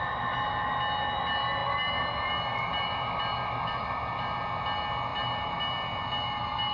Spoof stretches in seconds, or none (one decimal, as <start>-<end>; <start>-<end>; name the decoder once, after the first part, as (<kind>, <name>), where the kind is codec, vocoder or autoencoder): 5.1-5.6 (vocoder, BigVGAN v2)